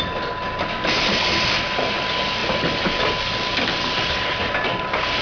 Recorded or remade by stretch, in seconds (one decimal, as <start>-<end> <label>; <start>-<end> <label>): 0.0-5.2 recorded

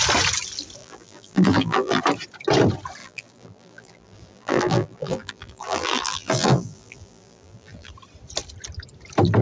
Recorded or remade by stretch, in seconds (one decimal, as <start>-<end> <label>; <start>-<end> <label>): 0.0-0.8 recorded; 0.8-2.0 remade; 2.0-3.0 recorded; 3.0-7.9 remade; 7.9-9.4 recorded

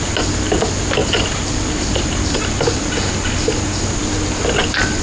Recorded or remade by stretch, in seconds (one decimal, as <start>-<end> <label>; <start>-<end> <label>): 0.0-1.0 recorded; 1.0-4.0 remade; 4.0-5.0 recorded